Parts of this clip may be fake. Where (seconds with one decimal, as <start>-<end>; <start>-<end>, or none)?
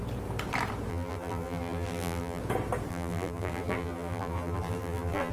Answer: 0.9-2.4; 2.9-5.3